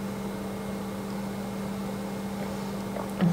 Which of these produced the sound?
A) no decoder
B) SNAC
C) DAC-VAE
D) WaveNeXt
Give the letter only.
A